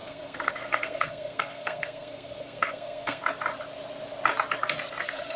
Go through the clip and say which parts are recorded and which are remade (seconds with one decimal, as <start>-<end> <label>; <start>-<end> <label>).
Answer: 0.0-3.2 remade; 3.2-5.0 recorded; 5.0-5.4 remade